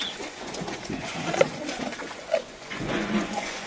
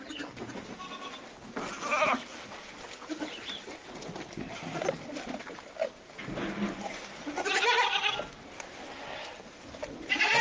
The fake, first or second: first